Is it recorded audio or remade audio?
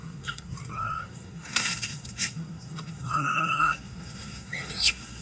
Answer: remade